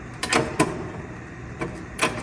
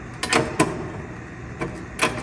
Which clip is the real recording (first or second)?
second